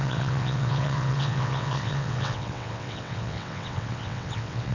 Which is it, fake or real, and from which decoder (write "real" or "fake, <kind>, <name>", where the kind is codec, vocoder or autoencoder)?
fake, vocoder, WaveNeXt